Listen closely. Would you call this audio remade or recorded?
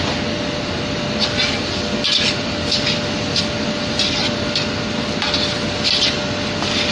recorded